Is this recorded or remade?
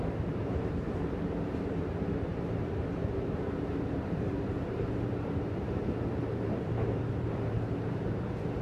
remade